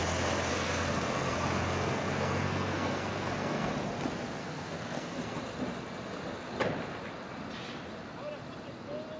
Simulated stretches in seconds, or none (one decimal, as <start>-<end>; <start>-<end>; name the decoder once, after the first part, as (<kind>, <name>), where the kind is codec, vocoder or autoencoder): 0.5-3.7 (codec, SNAC); 4.4-5.4